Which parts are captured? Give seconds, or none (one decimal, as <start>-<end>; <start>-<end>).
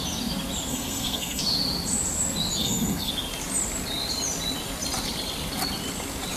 0.0-0.7; 1.4-2.6; 3.1-6.4